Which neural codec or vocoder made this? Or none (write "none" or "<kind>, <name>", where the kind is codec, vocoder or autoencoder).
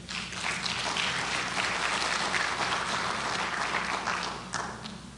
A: none